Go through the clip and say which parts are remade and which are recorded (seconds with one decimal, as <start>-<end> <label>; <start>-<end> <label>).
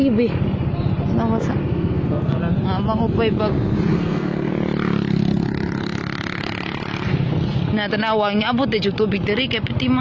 0.0-1.6 recorded; 1.6-2.4 remade; 2.4-3.9 recorded; 3.9-4.5 remade; 4.5-10.0 recorded